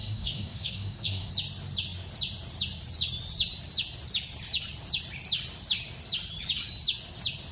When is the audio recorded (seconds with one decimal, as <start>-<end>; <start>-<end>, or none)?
1.3-7.5